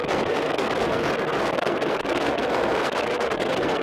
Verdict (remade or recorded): remade